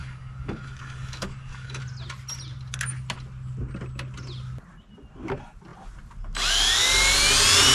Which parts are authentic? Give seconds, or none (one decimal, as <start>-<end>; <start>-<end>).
1.8-7.7